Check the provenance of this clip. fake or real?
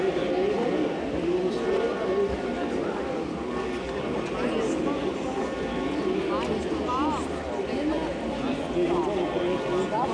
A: real